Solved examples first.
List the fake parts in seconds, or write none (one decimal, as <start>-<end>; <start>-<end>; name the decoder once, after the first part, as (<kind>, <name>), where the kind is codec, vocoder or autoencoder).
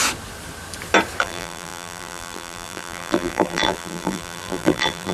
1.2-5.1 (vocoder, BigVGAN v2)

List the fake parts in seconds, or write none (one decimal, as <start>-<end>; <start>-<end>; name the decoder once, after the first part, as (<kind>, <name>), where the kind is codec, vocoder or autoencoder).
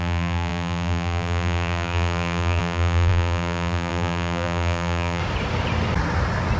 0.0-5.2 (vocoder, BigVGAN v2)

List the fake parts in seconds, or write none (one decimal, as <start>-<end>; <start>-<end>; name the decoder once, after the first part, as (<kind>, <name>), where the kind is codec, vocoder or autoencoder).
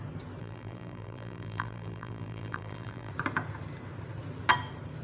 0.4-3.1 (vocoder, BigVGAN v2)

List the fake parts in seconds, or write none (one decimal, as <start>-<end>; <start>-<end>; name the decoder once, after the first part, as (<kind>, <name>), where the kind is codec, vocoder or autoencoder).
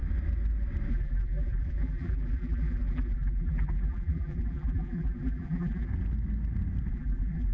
0.9-5.9 (vocoder, BigVGAN v2); 6.9-7.5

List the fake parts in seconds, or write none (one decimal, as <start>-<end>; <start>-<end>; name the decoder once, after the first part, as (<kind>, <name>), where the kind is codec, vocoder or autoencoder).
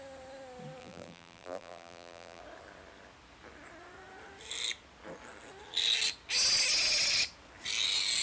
0.8-2.4 (vocoder, BigVGAN v2)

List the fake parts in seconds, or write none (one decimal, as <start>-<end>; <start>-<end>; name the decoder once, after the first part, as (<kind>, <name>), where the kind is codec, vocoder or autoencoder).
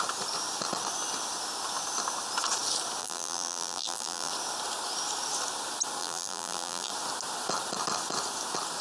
3.0-4.3 (vocoder, BigVGAN v2); 6.0-6.9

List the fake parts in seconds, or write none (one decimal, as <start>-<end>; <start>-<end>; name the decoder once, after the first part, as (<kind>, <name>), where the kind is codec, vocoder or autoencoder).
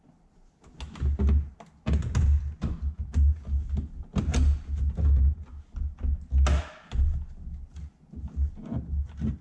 none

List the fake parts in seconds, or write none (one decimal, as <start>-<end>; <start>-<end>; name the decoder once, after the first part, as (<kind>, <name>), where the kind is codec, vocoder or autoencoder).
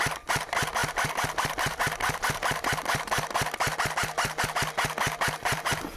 none